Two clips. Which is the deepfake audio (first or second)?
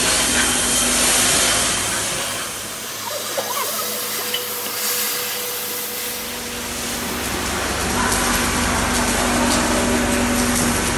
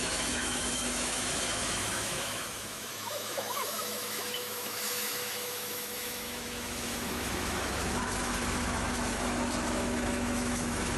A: second